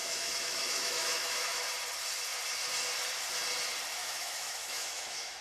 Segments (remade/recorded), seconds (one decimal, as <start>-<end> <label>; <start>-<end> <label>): 0.0-1.7 remade; 1.7-4.0 recorded; 4.0-5.4 remade